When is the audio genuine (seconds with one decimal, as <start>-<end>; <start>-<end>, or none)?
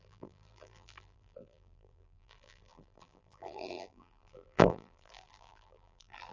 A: none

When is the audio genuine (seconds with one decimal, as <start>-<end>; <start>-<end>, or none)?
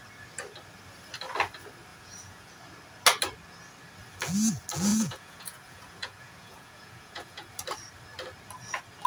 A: 0.0-1.9; 2.5-4.9; 7.5-9.1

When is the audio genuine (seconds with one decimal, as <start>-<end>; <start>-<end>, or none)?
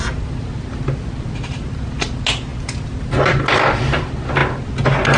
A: 0.0-5.2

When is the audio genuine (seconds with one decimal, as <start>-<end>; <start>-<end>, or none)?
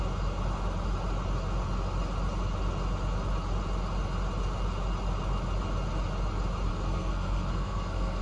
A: 0.0-6.7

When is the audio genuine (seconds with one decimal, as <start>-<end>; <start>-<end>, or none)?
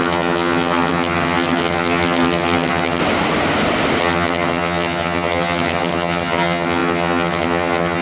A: 3.0-4.0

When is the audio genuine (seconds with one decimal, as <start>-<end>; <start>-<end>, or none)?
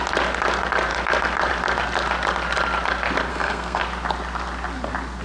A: 0.0-3.3; 3.8-5.2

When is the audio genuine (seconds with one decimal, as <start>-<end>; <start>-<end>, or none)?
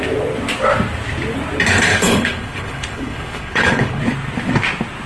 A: 0.0-1.9; 4.0-5.1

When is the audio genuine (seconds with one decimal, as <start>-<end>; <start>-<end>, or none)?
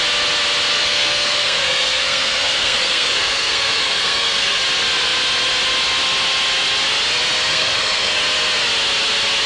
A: 0.0-0.7; 4.6-7.5; 8.2-9.5